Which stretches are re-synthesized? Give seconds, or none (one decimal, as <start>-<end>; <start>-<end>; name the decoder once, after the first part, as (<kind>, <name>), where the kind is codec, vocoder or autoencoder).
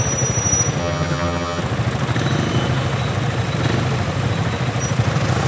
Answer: 0.8-1.6 (vocoder, HiFi-GAN)